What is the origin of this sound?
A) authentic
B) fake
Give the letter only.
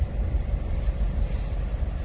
B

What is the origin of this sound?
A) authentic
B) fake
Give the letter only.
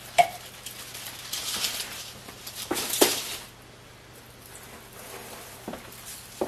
B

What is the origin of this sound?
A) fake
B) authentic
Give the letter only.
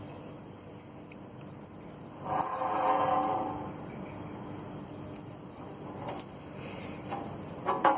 B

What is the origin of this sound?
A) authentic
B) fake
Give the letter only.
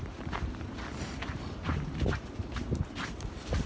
B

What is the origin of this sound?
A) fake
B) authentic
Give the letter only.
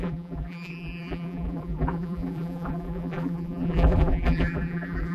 A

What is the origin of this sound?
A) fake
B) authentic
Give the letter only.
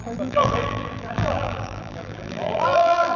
A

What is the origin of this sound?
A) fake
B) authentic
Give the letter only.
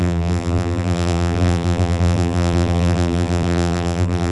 A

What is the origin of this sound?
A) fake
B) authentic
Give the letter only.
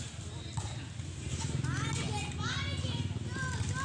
B